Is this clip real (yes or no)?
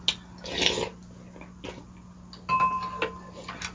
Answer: yes